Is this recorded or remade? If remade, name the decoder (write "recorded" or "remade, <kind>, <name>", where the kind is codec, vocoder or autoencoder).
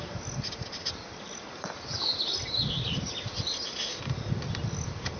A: recorded